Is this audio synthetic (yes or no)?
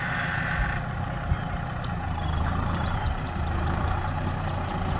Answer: yes